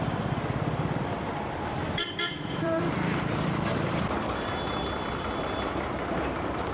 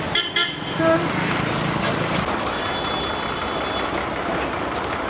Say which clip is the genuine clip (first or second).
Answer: second